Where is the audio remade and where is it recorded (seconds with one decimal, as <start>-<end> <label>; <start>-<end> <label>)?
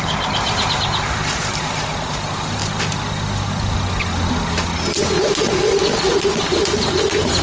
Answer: 0.0-2.6 remade; 2.6-6.4 recorded; 6.4-7.4 remade